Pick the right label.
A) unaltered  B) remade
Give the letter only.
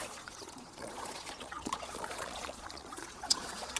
B